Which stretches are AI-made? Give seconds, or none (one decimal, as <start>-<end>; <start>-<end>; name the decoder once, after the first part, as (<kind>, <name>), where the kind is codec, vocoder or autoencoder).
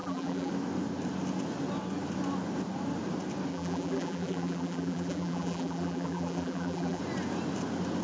0.0-0.5 (vocoder, BigVGAN v2); 3.5-7.0